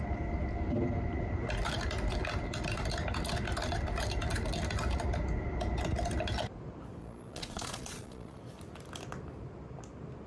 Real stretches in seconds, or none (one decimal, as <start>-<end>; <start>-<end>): 0.0-7.0; 8.4-10.3